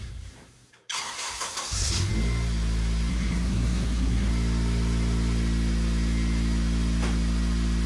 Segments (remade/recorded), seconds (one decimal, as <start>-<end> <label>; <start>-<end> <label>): 0.0-2.1 remade; 2.1-3.1 recorded; 3.1-4.3 remade; 4.3-7.9 recorded